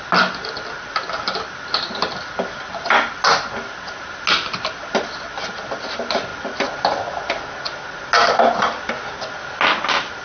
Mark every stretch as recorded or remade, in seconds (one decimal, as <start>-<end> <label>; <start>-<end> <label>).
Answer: 0.0-10.2 recorded